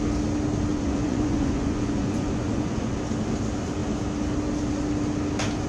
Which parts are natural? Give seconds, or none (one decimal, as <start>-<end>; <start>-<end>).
0.0-0.7; 3.0-5.7